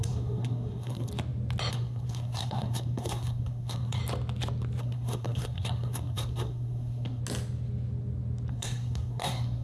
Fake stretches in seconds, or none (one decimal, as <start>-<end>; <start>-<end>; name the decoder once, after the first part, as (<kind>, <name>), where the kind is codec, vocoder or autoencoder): 0.0-1.1 (codec, SNAC); 1.7-4.0; 4.8-7.2; 8.5-9.6